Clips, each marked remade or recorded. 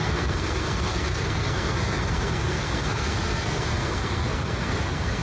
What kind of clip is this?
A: remade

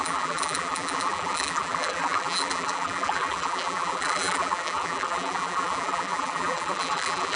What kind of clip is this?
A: remade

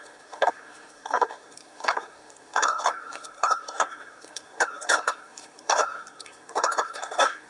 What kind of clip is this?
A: remade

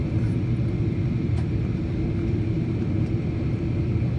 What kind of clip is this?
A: recorded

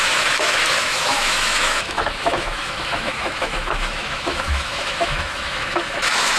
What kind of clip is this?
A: remade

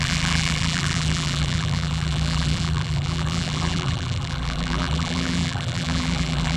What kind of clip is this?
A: remade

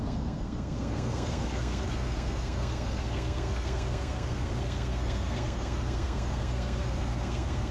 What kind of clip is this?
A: remade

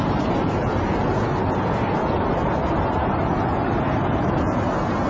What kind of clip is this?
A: recorded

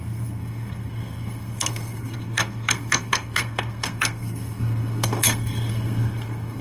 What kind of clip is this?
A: remade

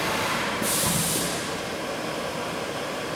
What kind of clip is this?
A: remade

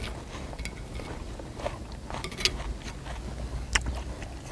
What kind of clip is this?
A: recorded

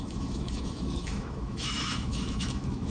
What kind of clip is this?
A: remade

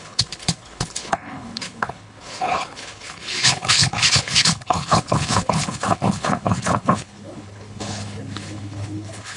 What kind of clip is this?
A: remade